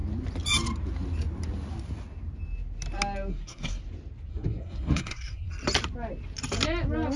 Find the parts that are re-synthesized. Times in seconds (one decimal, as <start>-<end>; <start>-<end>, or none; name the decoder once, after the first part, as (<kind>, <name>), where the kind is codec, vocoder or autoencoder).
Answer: 3.3-3.8 (codec, SNAC); 4.3-5.5